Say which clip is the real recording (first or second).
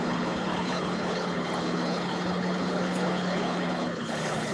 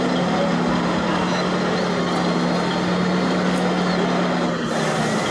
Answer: second